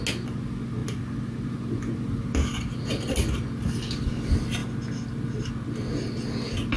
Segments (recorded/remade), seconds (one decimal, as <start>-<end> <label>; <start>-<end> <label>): 0.0-6.8 recorded